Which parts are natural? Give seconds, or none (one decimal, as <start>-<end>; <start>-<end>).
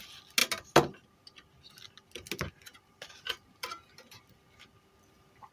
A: 0.0-5.5